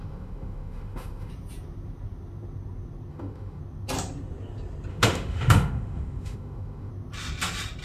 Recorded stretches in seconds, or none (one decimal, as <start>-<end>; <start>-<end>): 1.3-3.1; 3.6-4.9; 6.9-7.8